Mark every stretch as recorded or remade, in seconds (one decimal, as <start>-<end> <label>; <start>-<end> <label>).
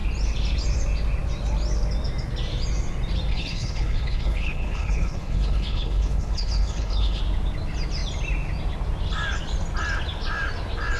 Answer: 0.0-3.3 recorded; 3.3-7.2 remade; 7.2-11.0 recorded